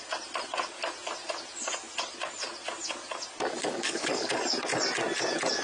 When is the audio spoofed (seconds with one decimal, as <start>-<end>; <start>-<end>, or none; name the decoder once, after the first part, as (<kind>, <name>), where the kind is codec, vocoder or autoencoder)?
3.6-4.3 (codec, DAC)